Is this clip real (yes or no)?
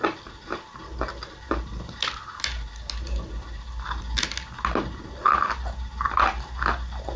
yes